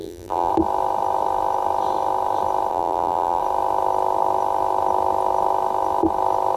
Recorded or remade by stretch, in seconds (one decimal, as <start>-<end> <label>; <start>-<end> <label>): 0.0-0.5 remade; 0.5-2.7 recorded; 2.7-3.4 remade; 3.4-6.6 recorded